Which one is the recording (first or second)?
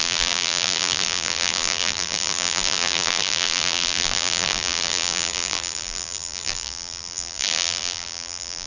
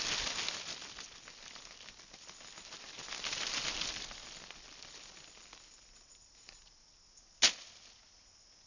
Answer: second